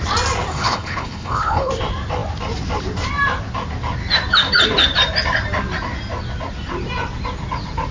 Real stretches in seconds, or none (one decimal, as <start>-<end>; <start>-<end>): 0.0-0.5; 1.7-7.9